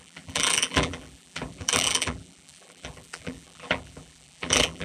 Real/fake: fake